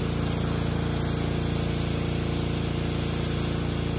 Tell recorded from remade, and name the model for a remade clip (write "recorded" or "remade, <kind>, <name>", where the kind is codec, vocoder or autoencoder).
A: recorded